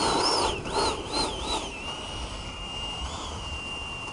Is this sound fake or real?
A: real